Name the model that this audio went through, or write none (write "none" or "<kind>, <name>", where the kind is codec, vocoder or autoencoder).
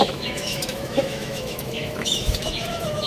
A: autoencoder, DAC-VAE